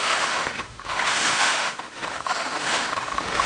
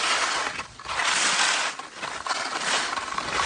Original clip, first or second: second